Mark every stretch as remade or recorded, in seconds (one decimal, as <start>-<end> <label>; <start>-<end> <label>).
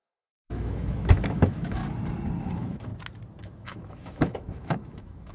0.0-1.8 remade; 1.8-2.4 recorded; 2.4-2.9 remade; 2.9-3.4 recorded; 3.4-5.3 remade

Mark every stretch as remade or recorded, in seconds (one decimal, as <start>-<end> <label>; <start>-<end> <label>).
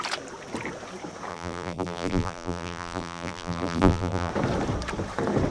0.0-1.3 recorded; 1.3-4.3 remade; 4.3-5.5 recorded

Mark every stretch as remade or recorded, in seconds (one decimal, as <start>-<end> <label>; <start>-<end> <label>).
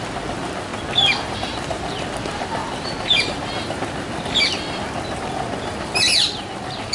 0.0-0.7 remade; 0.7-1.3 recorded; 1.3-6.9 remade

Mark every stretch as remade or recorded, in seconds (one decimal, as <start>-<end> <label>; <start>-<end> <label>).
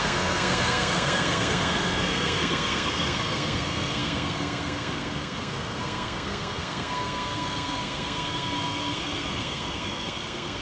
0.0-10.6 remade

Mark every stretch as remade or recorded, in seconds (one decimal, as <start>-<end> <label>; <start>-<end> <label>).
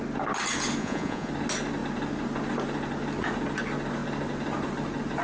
0.0-0.8 recorded; 0.8-1.3 remade; 1.3-5.2 recorded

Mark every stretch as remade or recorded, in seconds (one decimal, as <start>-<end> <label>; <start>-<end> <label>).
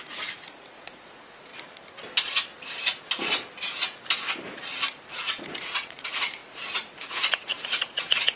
0.0-1.5 remade; 1.5-5.1 recorded; 5.1-8.4 remade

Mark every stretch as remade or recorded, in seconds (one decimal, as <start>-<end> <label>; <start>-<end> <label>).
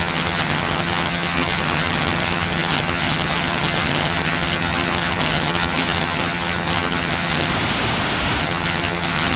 0.0-7.5 remade; 7.5-8.4 recorded; 8.4-9.4 remade